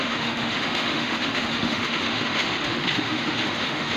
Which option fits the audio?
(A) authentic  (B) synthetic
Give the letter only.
B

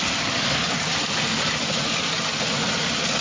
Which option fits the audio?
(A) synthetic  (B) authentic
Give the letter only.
A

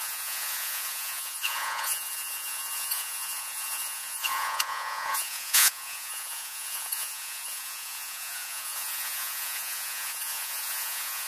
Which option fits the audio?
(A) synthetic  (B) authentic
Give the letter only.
A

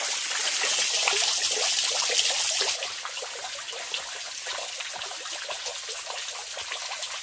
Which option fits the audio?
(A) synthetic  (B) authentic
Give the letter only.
B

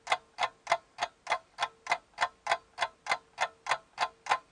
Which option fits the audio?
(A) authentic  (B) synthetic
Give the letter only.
A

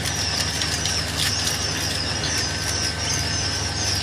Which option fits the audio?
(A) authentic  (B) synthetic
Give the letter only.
A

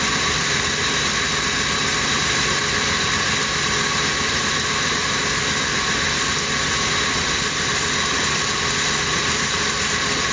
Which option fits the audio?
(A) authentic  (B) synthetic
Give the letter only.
A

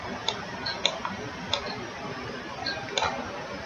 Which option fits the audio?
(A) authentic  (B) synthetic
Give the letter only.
A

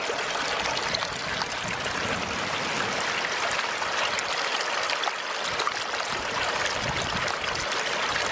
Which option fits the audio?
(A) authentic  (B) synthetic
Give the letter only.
A